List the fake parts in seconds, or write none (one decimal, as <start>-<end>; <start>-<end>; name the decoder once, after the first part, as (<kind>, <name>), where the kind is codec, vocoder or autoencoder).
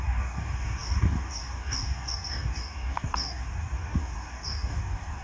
0.0-5.2 (codec, DAC)